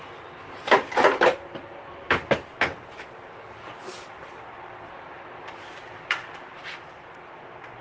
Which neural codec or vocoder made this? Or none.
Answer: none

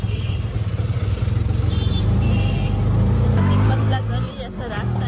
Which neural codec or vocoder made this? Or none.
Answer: none